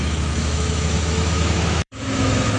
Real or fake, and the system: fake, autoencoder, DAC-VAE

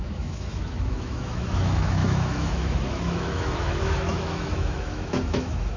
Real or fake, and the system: fake, autoencoder, DAC-VAE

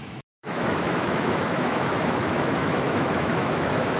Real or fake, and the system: fake, autoencoder, DAC-VAE